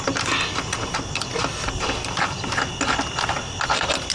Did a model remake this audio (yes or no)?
no